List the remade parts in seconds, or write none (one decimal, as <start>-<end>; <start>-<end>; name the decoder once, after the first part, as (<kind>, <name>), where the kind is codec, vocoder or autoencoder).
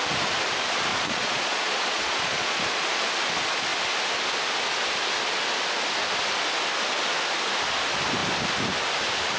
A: 0.9-2.6 (vocoder, Vocos)